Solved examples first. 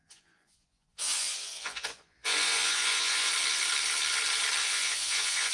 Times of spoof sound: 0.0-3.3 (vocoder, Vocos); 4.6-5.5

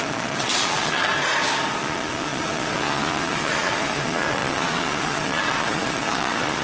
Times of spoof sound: 0.0-1.1 (vocoder, Vocos); 1.8-6.6

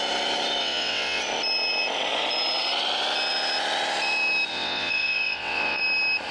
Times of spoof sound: 0.6-1.2 (vocoder, WaveNeXt); 4.5-5.8

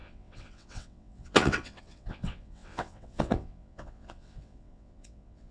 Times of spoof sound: 0.0-5.5 (vocoder, WaveNeXt)

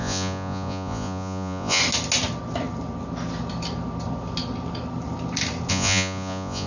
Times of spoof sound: 0.0-1.8 (vocoder, Vocos); 5.7-6.7

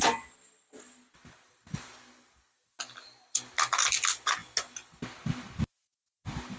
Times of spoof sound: none

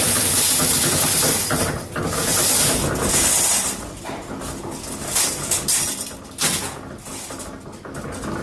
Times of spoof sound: none

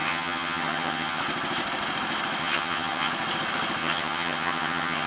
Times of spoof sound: 0.0-1.2 (vocoder, HiFi-GAN); 2.4-3.1; 3.8-5.1